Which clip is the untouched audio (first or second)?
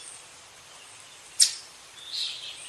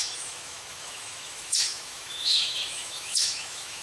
first